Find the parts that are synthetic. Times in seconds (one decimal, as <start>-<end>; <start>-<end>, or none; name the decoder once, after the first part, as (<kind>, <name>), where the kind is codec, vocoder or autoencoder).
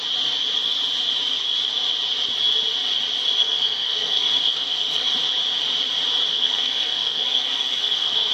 3.4-5.1 (codec, SNAC); 6.3-8.3